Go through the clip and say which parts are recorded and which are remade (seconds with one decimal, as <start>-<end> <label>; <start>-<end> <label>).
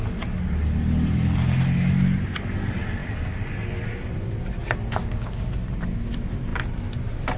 0.0-5.0 recorded; 5.0-5.5 remade; 5.5-7.4 recorded